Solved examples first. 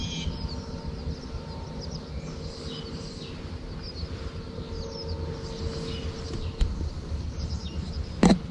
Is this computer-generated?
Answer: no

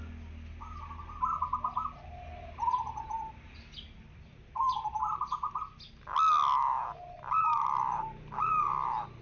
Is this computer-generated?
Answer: no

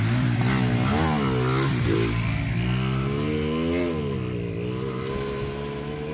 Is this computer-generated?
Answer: no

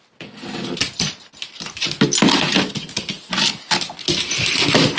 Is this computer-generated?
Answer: no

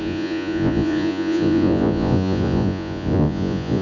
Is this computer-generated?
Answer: yes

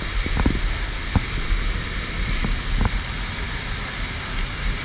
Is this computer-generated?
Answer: no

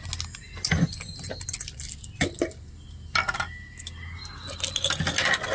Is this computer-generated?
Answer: no